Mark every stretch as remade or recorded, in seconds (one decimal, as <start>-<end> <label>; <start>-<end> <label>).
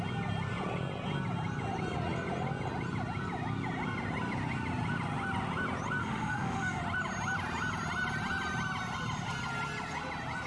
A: 0.0-6.0 recorded; 6.0-6.8 remade; 6.8-10.5 recorded